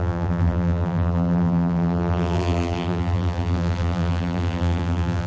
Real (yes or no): no